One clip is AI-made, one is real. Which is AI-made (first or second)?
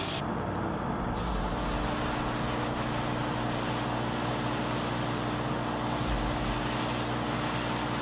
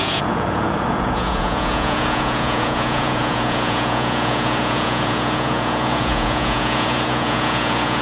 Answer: second